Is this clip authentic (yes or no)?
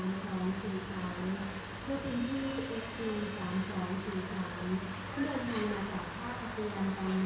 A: yes